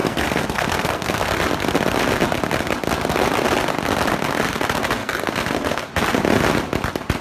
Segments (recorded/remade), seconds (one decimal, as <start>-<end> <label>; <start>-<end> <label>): 0.0-1.2 remade; 1.2-5.0 recorded; 5.0-5.9 remade; 5.9-7.2 recorded